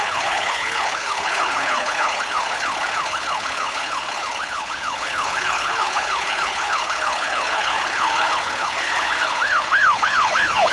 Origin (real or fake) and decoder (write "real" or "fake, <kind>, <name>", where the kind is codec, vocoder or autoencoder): fake, codec, HILCodec